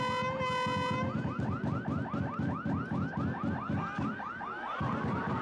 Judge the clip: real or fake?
real